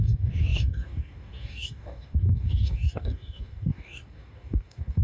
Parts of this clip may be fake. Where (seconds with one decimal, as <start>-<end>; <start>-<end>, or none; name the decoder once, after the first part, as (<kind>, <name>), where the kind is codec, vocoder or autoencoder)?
0.0-5.0 (codec, DAC)